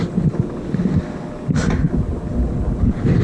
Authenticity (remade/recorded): recorded